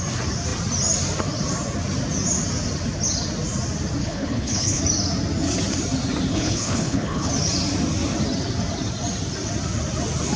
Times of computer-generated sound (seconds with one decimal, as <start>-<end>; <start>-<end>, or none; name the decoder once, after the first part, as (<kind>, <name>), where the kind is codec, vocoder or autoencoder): 4.0-4.8 (codec, HILCodec); 6.3-7.3